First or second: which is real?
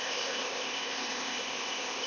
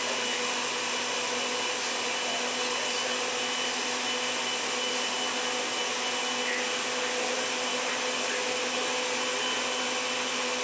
second